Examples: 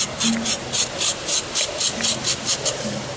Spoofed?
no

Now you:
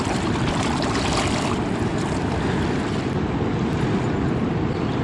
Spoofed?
yes